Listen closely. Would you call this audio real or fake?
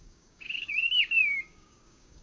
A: fake